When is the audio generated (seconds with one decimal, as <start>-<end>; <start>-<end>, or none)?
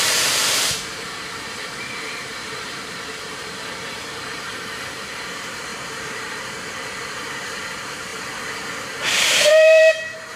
0.0-8.1; 9.1-10.4